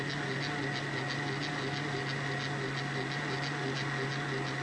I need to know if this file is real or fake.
real